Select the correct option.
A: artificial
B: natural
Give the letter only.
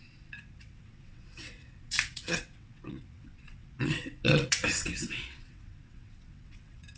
A